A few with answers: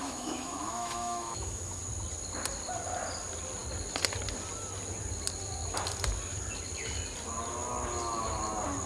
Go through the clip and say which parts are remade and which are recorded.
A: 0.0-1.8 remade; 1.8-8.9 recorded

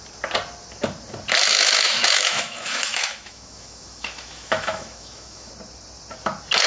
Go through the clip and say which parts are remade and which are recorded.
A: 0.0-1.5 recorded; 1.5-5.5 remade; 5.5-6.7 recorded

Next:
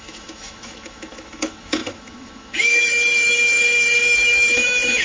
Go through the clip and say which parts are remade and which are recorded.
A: 0.0-5.0 remade

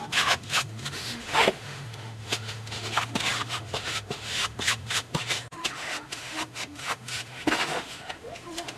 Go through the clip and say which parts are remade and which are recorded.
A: 0.0-8.8 remade

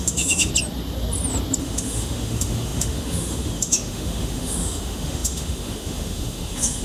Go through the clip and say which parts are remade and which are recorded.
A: 0.0-0.5 remade; 0.5-1.6 recorded; 1.6-6.8 remade

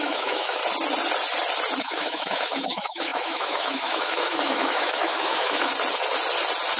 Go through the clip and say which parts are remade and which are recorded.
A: 0.0-0.6 remade; 0.6-1.8 recorded; 1.8-5.7 remade; 5.7-6.8 recorded

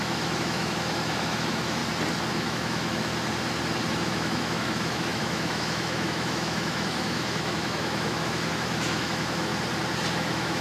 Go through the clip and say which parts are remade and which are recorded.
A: 0.0-1.8 remade; 1.8-2.3 recorded; 2.3-3.1 remade; 3.1-3.9 recorded; 3.9-9.5 remade; 9.5-10.1 recorded; 10.1-10.6 remade